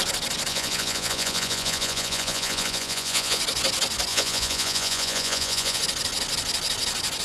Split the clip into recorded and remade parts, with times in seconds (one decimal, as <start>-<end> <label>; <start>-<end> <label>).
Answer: 0.0-0.5 recorded; 0.5-3.4 remade; 3.4-4.1 recorded; 4.1-5.8 remade; 5.8-7.2 recorded